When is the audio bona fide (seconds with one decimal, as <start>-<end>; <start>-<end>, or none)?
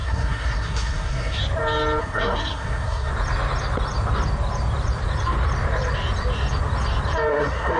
1.4-2.0; 3.1-7.3